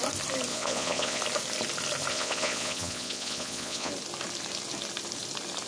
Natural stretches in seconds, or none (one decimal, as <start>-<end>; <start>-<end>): 0.0-0.5; 1.2-2.1; 3.9-5.7